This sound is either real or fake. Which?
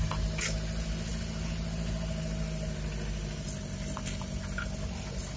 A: real